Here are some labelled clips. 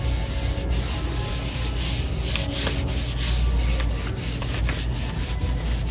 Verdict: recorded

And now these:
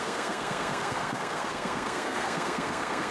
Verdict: remade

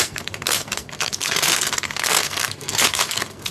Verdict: remade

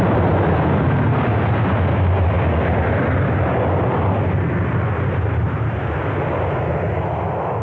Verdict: recorded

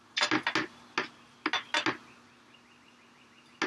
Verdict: recorded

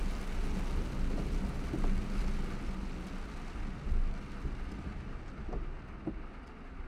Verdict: recorded